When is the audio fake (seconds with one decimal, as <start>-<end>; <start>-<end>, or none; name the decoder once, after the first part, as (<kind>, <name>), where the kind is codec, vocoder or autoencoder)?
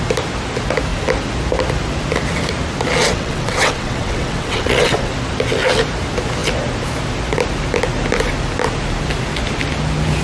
3.0-5.1 (vocoder, WaveNeXt)